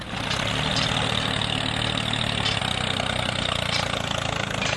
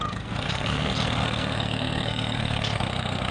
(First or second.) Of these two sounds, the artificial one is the second